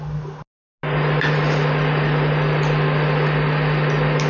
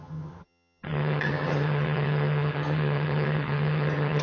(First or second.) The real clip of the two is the first